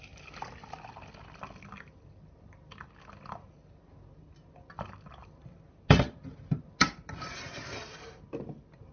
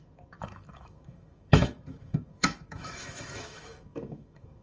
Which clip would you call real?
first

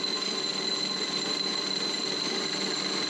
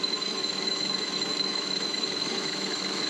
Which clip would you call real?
first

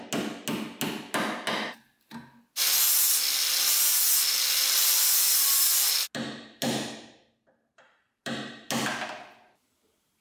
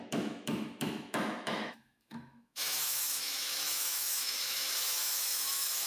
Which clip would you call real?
first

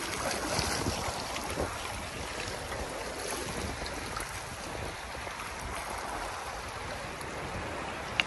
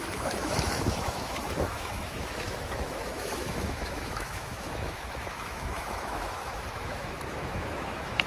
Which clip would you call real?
first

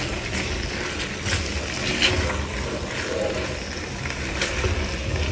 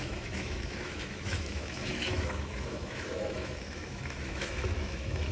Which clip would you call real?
first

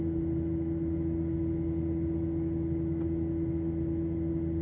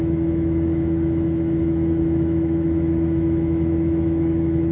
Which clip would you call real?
first